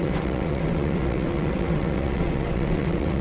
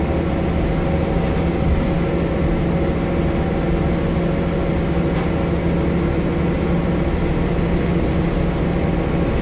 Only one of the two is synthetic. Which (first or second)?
first